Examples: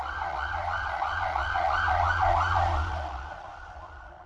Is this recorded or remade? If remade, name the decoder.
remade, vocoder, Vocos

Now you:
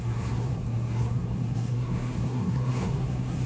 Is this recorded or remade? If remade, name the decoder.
remade, codec, SNAC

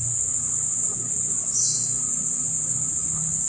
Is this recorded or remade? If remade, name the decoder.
recorded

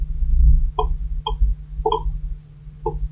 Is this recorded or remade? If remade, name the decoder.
recorded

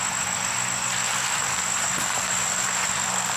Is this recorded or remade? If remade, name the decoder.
recorded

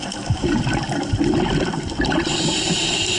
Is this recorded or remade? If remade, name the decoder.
recorded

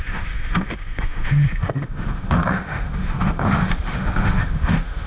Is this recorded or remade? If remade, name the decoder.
remade, autoencoder, DAC-VAE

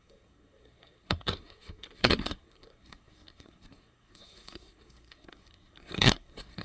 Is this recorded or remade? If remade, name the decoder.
remade, codec, SNAC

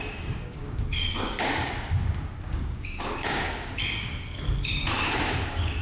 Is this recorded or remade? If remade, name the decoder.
remade, codec, DAC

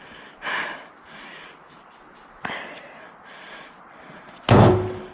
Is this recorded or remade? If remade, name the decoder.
recorded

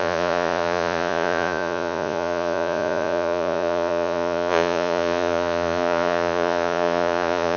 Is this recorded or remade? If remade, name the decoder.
remade, vocoder, Vocos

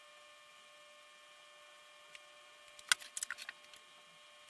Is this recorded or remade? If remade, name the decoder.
recorded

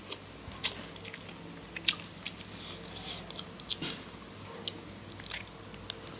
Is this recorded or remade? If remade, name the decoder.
recorded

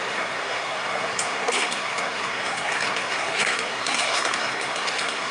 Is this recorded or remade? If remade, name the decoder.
remade, codec, SNAC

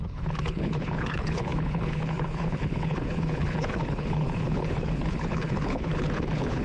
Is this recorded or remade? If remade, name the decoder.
remade, codec, HILCodec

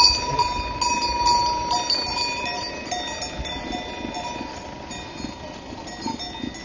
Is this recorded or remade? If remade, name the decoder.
recorded